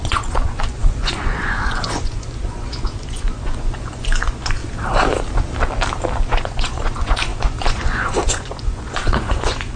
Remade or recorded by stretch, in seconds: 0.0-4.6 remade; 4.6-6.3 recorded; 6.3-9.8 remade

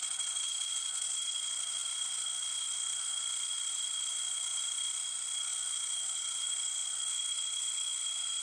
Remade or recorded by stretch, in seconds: 0.0-8.4 recorded

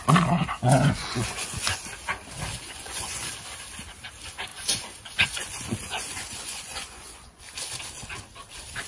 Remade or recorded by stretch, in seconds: 0.0-0.4 recorded; 0.4-1.8 remade; 1.8-2.5 recorded; 2.5-3.3 remade; 3.3-4.5 recorded; 4.5-7.4 remade; 7.4-8.9 recorded